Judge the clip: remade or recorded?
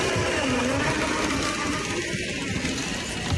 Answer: recorded